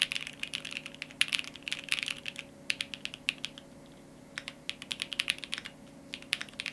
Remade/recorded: recorded